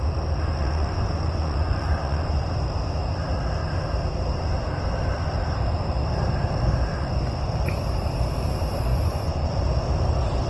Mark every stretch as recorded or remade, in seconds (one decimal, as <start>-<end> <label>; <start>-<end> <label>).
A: 0.0-0.6 recorded; 0.6-2.4 remade; 2.4-6.9 recorded; 6.9-7.5 remade; 7.5-8.9 recorded; 8.9-9.5 remade; 9.5-10.5 recorded